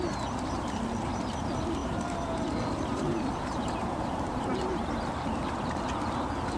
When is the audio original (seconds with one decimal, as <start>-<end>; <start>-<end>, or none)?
0.0-1.8; 5.8-6.6

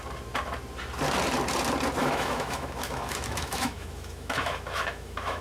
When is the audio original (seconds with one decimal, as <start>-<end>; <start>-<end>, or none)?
0.0-2.0

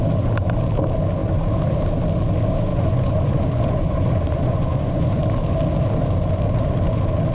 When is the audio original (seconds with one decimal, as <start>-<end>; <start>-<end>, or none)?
0.0-2.7; 5.2-7.3

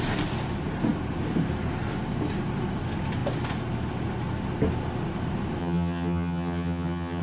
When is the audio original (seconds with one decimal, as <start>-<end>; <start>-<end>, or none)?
0.0-5.6

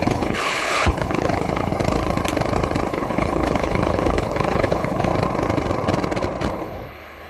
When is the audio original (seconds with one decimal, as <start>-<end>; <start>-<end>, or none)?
1.7-2.9; 5.1-6.5